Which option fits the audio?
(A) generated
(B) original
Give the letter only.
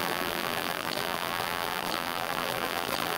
A